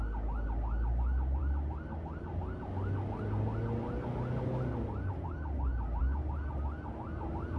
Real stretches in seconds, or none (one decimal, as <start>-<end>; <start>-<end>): 0.0-7.6